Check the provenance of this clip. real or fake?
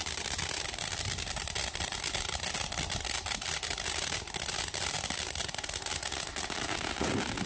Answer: real